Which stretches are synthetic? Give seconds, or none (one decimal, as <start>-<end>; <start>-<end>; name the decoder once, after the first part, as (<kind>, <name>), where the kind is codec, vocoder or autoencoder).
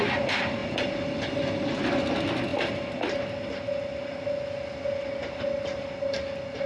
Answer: none